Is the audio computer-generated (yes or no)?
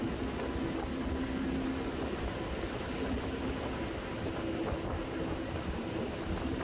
no